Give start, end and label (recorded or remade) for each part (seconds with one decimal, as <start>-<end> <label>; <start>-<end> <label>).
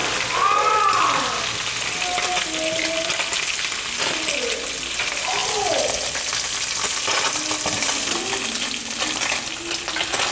0.0-10.3 recorded